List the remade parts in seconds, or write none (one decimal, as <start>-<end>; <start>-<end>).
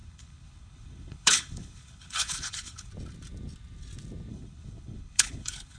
0.0-2.9; 4.3-5.8